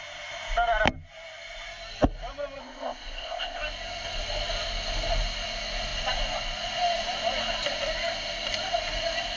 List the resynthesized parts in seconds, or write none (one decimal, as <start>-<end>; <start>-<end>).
2.6-3.6